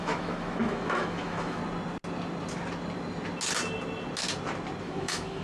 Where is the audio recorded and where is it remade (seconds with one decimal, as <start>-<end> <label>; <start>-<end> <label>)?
0.0-1.6 remade; 1.6-4.8 recorded; 4.8-5.4 remade